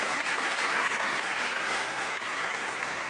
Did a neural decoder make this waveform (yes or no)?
yes